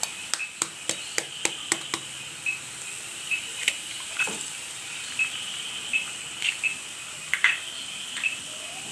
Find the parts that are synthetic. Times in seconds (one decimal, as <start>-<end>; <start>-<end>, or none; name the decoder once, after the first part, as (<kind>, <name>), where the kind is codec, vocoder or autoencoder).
3.1-5.6 (vocoder, BigVGAN v2)